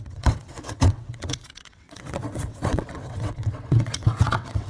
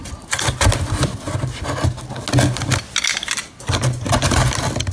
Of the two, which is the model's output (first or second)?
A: first